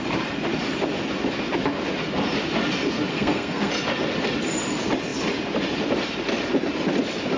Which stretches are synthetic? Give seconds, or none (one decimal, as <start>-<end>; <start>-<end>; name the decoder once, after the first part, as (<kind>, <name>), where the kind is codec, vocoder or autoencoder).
3.1-3.7 (codec, SNAC)